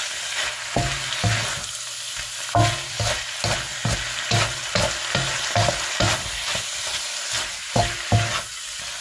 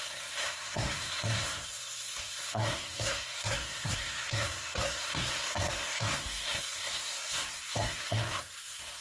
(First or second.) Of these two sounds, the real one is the first